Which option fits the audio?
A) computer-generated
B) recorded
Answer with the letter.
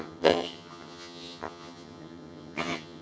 A